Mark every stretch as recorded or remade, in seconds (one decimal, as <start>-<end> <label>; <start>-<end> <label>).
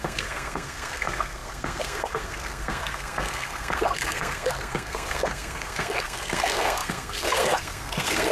0.0-8.3 remade